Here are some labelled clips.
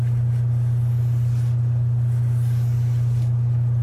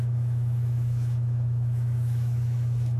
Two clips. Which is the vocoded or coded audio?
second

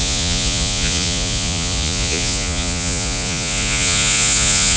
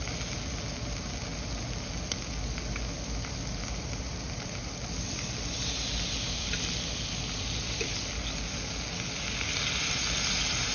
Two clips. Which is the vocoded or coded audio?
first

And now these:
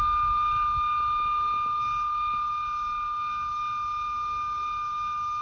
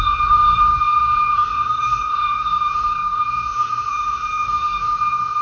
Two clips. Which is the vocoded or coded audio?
second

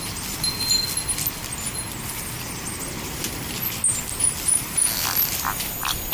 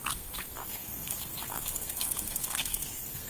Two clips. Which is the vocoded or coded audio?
second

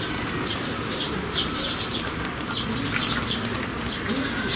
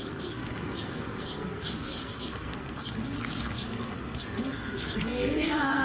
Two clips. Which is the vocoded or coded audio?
second